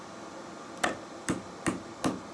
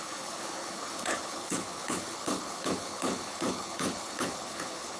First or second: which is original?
first